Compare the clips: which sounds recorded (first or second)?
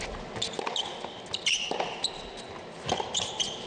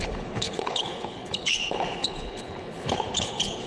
first